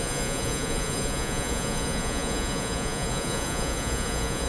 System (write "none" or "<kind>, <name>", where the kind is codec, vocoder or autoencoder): vocoder, Vocos